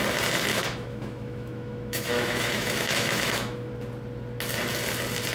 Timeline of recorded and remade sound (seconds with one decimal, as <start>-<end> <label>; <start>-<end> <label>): 0.0-0.5 recorded; 0.5-3.7 remade; 3.7-5.3 recorded